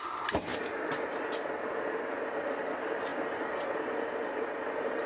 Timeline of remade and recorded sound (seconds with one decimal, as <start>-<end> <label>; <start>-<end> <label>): 0.0-5.1 recorded